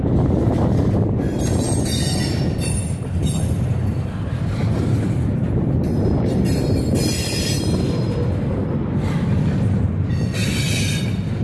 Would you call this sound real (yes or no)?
yes